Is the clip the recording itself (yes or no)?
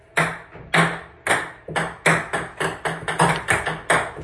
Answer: yes